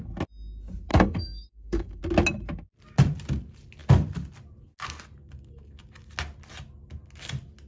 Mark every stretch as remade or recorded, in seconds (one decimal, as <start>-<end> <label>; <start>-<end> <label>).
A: 0.0-0.9 recorded; 0.9-2.0 remade; 2.0-7.7 recorded